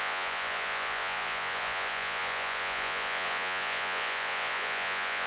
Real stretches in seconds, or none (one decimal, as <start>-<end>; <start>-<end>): none